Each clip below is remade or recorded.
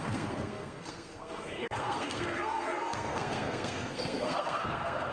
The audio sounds remade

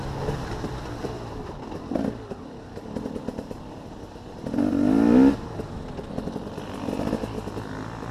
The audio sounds recorded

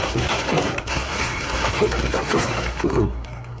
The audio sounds remade